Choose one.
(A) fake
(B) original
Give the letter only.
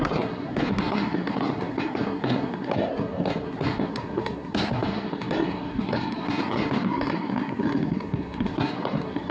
A